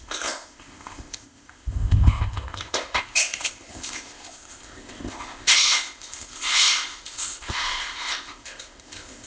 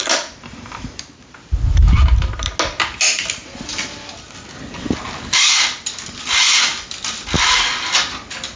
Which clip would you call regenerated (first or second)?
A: first